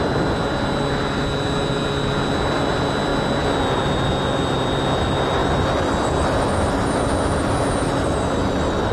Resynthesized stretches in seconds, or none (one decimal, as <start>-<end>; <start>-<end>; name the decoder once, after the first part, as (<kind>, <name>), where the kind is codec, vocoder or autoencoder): none